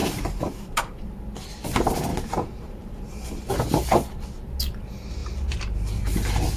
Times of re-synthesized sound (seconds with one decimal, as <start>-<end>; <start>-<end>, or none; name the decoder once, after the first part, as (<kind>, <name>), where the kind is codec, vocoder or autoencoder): 0.0-0.8 (vocoder, BigVGAN v2); 2.1-3.5